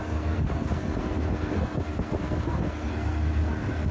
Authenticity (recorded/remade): remade